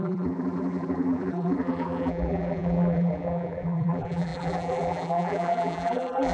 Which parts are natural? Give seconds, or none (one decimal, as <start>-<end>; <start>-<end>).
none